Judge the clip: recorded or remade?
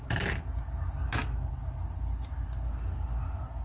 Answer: recorded